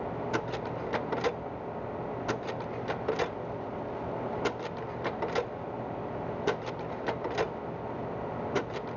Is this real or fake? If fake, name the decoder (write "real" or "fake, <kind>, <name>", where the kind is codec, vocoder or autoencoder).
real